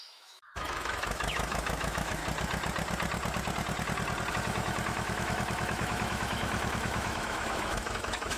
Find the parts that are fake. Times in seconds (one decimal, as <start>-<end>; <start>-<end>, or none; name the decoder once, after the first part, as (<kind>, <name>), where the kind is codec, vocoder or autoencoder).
0.0-2.2 (autoencoder, DAC-VAE); 4.3-8.4